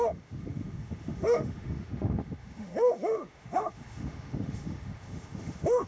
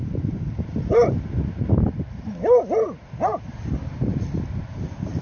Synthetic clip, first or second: first